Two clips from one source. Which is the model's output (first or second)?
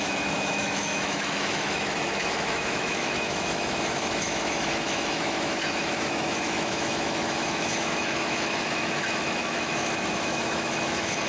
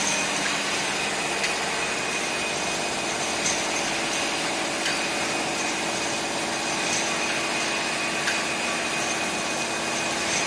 first